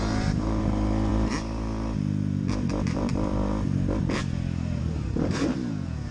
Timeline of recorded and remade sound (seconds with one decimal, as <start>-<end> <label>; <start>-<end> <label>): 0.0-6.1 remade